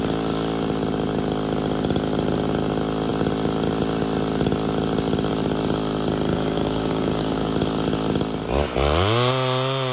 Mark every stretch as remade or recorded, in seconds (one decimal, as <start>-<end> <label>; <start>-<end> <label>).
0.0-6.3 recorded; 6.3-7.5 remade; 7.5-9.9 recorded

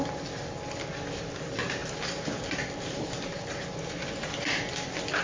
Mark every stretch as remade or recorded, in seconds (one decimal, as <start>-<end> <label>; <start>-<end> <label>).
0.0-5.2 recorded

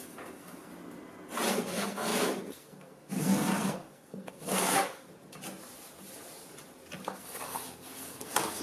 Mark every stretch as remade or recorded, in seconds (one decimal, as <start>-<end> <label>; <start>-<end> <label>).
0.0-0.7 remade; 0.7-1.5 recorded; 1.5-5.1 remade; 5.1-7.0 recorded; 7.0-8.6 remade

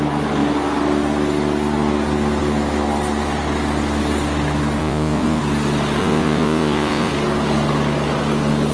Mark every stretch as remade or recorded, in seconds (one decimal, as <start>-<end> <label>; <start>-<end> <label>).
0.0-4.8 recorded; 4.8-5.4 remade; 5.4-6.0 recorded; 6.0-7.1 remade; 7.1-8.7 recorded

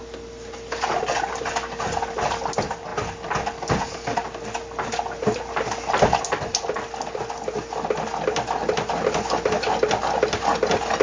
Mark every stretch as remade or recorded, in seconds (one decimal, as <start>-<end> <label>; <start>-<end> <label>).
0.0-11.0 recorded